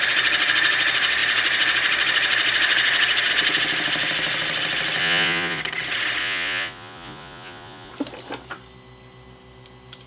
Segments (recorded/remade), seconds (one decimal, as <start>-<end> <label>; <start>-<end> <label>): 0.0-5.0 recorded; 5.0-5.6 remade; 5.6-6.2 recorded; 6.2-7.9 remade; 7.9-10.1 recorded